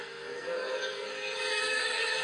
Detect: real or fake fake